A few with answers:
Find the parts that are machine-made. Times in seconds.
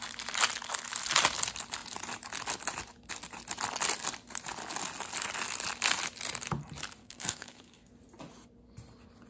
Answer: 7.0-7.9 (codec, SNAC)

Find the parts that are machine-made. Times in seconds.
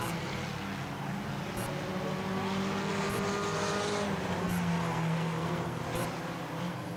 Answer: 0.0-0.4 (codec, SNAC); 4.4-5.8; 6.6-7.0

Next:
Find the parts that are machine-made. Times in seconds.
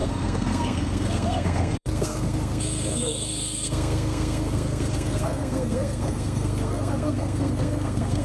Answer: 0.0-8.2 (codec, SNAC)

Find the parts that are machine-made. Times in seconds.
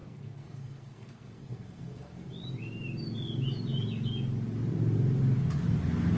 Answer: 0.0-2.3 (codec, SNAC)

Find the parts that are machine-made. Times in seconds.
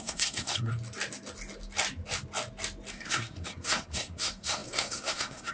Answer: 0.0-0.7 (codec, SNAC); 2.9-5.5